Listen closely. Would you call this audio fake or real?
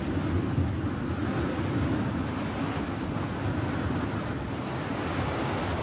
real